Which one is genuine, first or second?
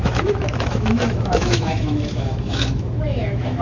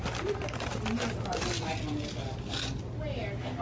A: second